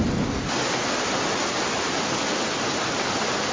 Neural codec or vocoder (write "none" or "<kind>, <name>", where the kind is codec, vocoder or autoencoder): none